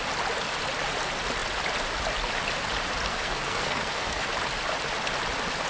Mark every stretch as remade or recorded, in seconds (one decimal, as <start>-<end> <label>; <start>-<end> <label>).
0.0-3.1 recorded; 3.1-4.3 remade; 4.3-5.7 recorded